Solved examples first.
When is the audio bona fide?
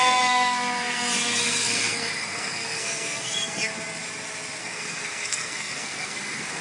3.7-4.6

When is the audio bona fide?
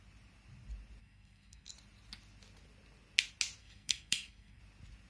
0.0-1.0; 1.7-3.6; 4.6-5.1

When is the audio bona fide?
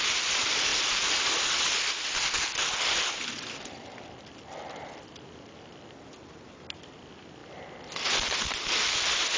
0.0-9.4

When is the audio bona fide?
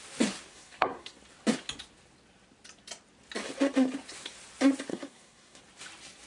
0.0-0.5; 1.2-4.9; 5.6-6.3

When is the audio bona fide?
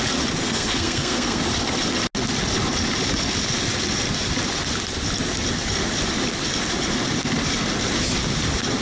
0.0-0.4; 1.4-8.8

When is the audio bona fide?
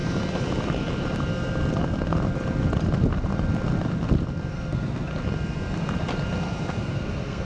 0.0-4.5; 5.1-6.8